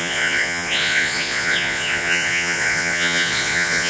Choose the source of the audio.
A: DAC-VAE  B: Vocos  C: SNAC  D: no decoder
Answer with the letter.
B